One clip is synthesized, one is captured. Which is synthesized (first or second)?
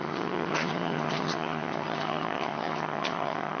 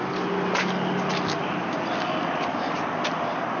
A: first